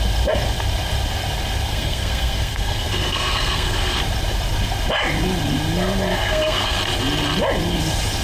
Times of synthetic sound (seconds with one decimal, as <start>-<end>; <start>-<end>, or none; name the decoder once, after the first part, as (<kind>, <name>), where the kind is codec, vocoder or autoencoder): 1.7-4.0 (codec, SNAC); 6.1-6.8